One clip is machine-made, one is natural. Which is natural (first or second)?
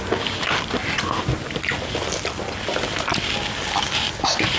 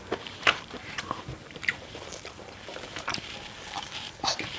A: first